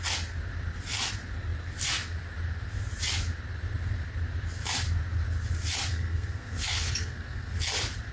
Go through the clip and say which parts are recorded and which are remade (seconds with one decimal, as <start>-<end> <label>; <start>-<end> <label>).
0.0-5.9 recorded; 5.9-7.6 remade; 7.6-8.1 recorded